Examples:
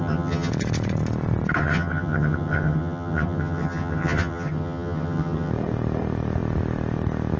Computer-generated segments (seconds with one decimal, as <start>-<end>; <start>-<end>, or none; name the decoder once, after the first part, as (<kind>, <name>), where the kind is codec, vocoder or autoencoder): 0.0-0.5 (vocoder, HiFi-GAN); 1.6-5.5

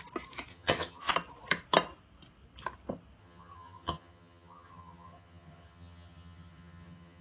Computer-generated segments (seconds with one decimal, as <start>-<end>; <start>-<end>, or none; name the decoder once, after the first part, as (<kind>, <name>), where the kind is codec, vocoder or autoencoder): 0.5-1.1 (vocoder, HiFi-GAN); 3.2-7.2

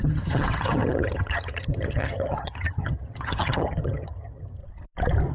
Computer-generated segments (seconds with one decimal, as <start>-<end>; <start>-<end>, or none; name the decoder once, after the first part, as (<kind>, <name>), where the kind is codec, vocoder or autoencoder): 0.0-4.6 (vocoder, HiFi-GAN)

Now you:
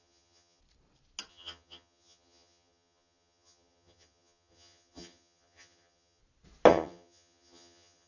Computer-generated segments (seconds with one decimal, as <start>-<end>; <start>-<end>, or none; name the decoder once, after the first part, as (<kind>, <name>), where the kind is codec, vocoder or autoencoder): 0.0-0.6 (vocoder, HiFi-GAN); 1.3-6.2; 6.7-8.1

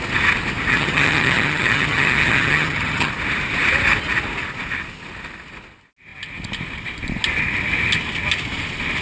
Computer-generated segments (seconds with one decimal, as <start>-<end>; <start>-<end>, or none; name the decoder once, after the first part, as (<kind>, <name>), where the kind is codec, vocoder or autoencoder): 0.7-3.1 (vocoder, HiFi-GAN)